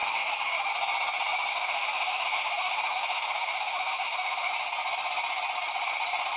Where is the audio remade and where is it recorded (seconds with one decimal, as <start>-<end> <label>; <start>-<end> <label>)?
0.0-0.7 remade; 0.7-1.5 recorded; 1.5-4.5 remade; 4.5-6.4 recorded

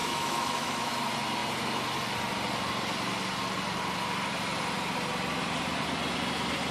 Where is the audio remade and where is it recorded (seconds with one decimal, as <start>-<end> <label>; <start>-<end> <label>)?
0.0-0.9 remade; 0.9-6.7 recorded

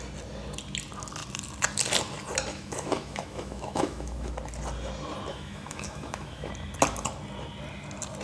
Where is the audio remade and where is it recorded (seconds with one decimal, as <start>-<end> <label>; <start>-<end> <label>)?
0.0-2.5 recorded; 2.5-4.3 remade; 4.3-5.3 recorded; 5.3-6.5 remade; 6.5-8.2 recorded

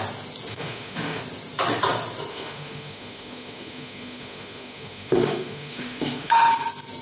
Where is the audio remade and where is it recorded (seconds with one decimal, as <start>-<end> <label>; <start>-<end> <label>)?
0.0-0.5 recorded; 0.5-1.2 remade; 1.2-2.3 recorded; 2.3-6.5 remade; 6.5-7.0 recorded

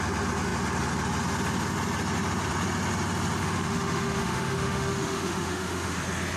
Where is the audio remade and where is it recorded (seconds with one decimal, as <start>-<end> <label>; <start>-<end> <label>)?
0.0-3.4 recorded; 3.4-6.0 remade; 6.0-6.4 recorded

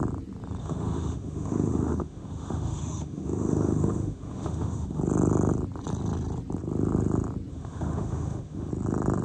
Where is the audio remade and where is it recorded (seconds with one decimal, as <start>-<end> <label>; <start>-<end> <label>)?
0.0-0.6 recorded; 0.6-5.0 remade; 5.0-7.5 recorded; 7.5-8.7 remade; 8.7-9.2 recorded

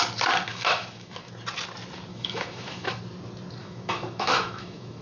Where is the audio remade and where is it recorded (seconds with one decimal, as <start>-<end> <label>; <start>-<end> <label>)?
0.0-0.5 recorded; 0.5-1.3 remade; 1.3-2.1 recorded; 2.1-3.0 remade; 3.0-3.6 recorded; 3.6-5.0 remade

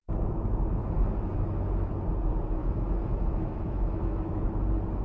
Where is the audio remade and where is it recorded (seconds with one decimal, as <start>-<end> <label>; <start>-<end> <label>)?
0.0-0.8 recorded; 0.8-1.9 remade; 1.9-2.6 recorded; 2.6-4.5 remade; 4.5-5.0 recorded